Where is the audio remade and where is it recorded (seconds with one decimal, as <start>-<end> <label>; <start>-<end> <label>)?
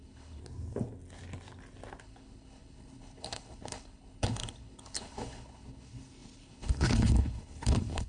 0.0-0.4 remade; 0.4-2.0 recorded; 2.0-8.1 remade